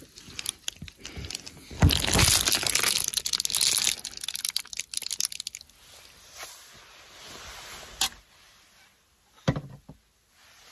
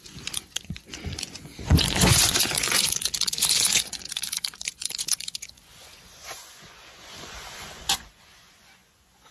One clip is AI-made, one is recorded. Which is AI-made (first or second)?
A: second